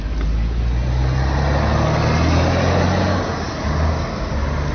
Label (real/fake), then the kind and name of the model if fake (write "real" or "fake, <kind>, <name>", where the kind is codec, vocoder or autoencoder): real